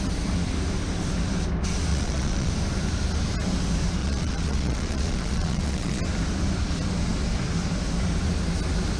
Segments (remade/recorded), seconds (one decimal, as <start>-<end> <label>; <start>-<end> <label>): 0.0-1.9 recorded; 1.9-2.5 remade; 2.5-4.0 recorded; 4.0-6.0 remade; 6.0-9.0 recorded